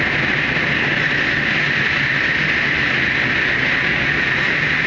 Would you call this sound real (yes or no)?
yes